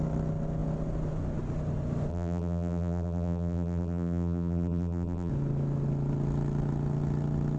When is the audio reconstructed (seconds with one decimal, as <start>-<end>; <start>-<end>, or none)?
2.1-5.3